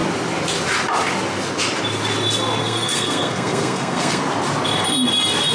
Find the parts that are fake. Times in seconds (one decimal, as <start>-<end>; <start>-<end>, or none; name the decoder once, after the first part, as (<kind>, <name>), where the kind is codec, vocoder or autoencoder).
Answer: 2.6-4.2 (codec, SNAC)